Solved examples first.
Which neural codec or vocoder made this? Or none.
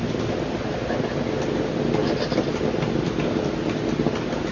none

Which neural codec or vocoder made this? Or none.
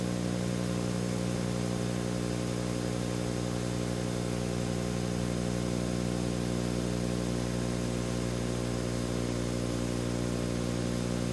none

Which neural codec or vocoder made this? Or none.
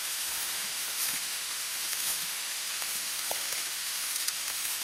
autoencoder, DAC-VAE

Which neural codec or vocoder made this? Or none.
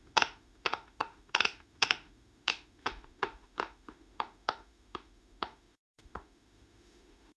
autoencoder, DAC-VAE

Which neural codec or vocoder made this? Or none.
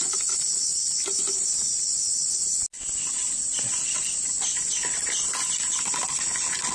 none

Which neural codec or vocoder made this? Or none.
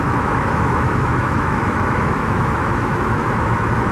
autoencoder, DAC-VAE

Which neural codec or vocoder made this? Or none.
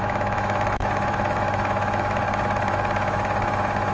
autoencoder, DAC-VAE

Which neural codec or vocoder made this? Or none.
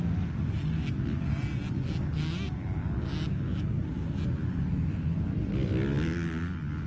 none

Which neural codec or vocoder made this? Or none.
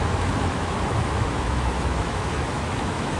autoencoder, DAC-VAE